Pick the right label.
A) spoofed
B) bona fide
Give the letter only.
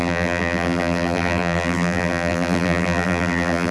A